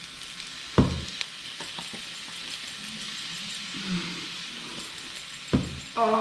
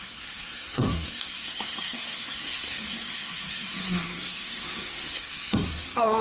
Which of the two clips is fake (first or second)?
second